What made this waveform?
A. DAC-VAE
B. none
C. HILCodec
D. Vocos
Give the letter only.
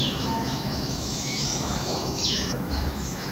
A